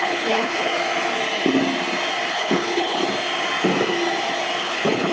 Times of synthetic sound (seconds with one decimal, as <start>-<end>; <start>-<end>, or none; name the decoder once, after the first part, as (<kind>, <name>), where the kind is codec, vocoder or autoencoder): 0.0-0.7 (codec, HILCodec); 2.3-3.0; 4.6-5.1